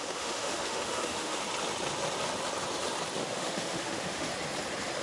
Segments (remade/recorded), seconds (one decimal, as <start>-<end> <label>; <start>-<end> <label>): 0.0-1.4 remade; 1.4-3.2 recorded; 3.2-4.3 remade; 4.3-5.0 recorded